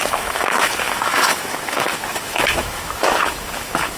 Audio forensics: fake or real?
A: fake